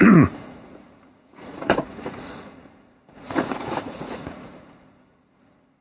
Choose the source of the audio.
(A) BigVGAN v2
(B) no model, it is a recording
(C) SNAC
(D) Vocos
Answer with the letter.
D